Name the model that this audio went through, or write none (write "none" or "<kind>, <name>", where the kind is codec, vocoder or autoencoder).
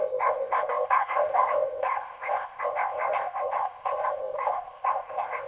codec, ZipCodec